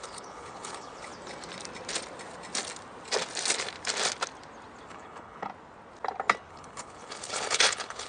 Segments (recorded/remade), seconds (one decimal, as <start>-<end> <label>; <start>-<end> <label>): 0.0-1.1 remade; 1.1-4.9 recorded; 4.9-5.5 remade; 5.5-6.5 recorded; 6.5-8.1 remade